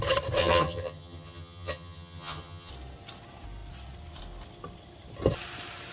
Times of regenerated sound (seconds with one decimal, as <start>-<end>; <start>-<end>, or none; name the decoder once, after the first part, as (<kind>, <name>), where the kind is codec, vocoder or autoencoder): 0.4-2.7 (vocoder, HiFi-GAN)